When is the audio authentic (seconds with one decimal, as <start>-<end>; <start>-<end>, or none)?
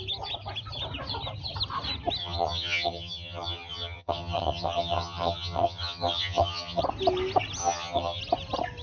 0.0-2.2; 6.8-7.6; 8.2-8.8